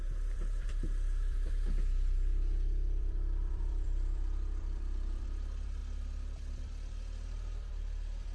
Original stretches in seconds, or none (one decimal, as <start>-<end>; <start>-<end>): 5.8-6.6